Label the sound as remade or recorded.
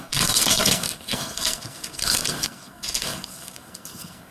remade